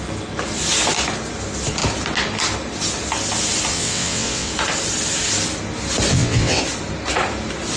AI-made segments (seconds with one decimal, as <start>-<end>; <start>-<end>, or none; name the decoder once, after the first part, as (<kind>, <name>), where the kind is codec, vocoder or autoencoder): 3.7-4.5 (vocoder, WaveNeXt); 6.1-6.6